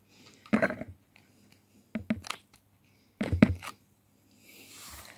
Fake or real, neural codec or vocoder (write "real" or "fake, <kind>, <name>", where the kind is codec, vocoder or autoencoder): real